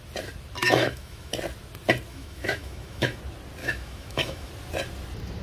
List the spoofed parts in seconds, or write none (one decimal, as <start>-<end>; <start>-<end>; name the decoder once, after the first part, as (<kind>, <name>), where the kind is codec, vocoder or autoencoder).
0.6-1.3 (autoencoder, DAC-VAE); 2.1-3.2; 3.6-4.5